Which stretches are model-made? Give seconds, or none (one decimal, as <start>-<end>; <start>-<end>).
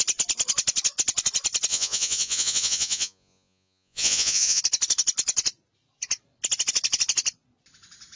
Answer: 1.7-4.6